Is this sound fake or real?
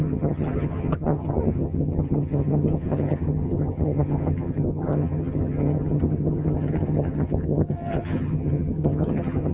fake